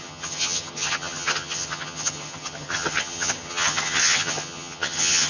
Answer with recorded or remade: remade